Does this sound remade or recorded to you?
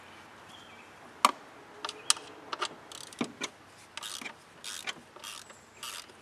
recorded